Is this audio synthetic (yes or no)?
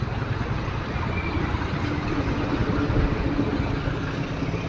no